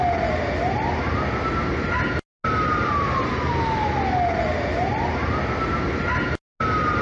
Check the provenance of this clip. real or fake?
real